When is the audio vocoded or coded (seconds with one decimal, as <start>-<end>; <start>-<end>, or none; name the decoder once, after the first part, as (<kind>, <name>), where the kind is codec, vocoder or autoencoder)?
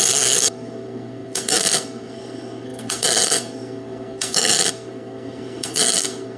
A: 0.0-6.4 (codec, SNAC)